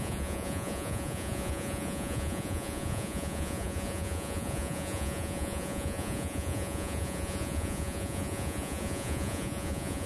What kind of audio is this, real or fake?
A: fake